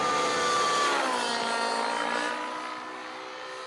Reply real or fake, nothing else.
real